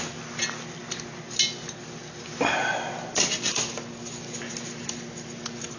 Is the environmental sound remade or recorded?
recorded